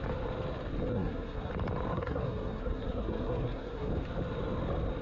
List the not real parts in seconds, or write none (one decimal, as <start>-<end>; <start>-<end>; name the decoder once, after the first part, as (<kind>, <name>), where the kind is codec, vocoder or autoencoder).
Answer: 0.9-1.5 (codec, SNAC); 1.9-3.9